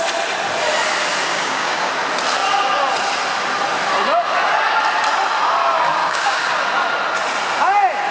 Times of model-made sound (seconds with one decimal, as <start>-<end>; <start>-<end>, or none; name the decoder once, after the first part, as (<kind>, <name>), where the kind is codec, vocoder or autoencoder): 1.3-1.9 (codec, DAC); 6.0-6.5